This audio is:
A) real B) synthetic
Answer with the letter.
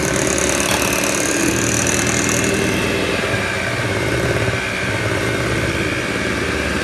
A